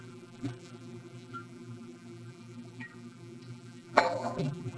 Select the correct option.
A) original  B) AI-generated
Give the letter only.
B